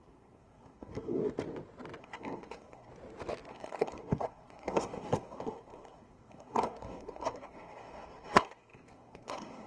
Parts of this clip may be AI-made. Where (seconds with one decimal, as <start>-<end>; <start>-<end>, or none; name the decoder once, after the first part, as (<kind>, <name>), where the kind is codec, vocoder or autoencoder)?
0.0-1.2 (codec, SNAC); 2.0-2.9; 3.5-9.7